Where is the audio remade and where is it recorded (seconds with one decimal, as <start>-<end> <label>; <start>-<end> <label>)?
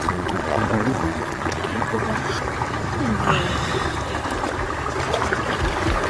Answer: 0.0-2.0 remade; 2.0-6.1 recorded